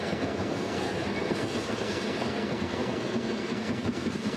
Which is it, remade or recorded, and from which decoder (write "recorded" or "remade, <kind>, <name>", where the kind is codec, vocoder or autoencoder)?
remade, codec, SNAC